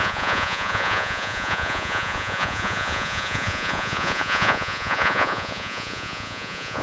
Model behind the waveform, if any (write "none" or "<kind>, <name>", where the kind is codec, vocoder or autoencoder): vocoder, Vocos